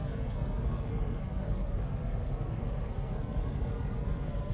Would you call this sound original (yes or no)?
no